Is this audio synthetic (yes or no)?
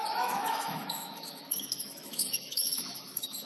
yes